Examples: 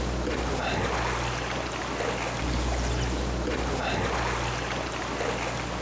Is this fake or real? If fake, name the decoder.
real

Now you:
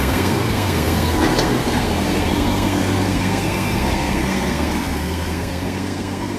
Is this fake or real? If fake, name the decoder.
fake, codec, SNAC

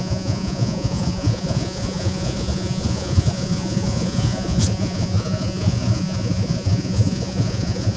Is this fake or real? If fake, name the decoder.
fake, vocoder, Vocos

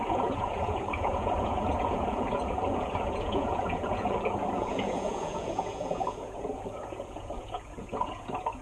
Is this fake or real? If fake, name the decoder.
fake, vocoder, Vocos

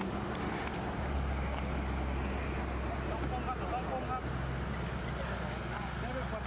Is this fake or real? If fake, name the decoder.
real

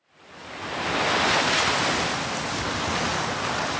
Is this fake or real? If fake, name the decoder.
real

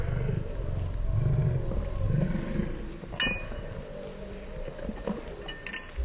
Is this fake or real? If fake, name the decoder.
real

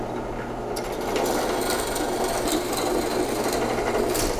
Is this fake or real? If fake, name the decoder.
real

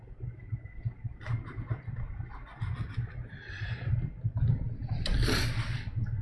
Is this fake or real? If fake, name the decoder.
real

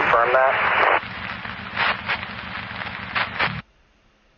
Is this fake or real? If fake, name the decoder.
real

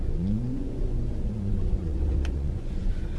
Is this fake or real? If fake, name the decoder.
fake, vocoder, Vocos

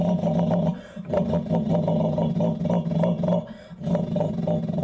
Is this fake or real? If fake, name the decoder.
real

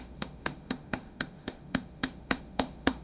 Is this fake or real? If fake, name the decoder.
fake, autoencoder, DAC-VAE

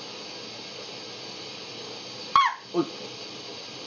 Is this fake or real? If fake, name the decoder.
real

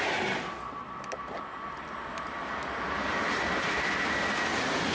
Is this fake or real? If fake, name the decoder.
real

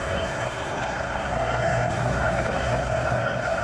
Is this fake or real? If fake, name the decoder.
fake, codec, SNAC